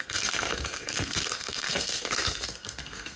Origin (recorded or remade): remade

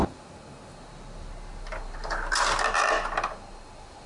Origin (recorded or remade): recorded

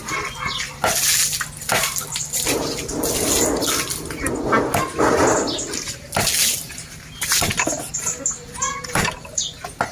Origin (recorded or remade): recorded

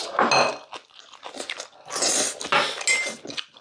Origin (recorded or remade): recorded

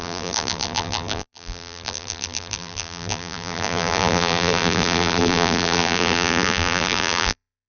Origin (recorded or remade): remade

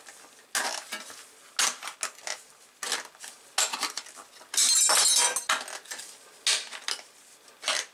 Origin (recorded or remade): recorded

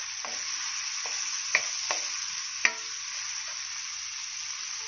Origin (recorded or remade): recorded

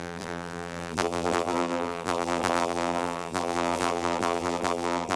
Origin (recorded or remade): remade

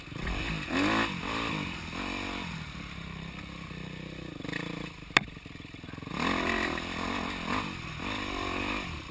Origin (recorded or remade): recorded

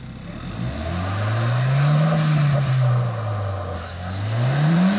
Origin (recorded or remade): recorded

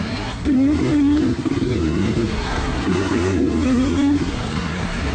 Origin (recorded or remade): remade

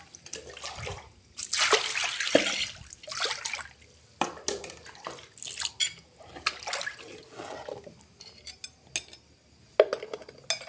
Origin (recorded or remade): recorded